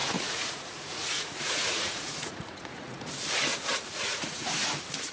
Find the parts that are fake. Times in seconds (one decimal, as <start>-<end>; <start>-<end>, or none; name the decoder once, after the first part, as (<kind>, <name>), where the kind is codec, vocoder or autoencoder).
0.0-3.1 (vocoder, Vocos); 3.5-4.5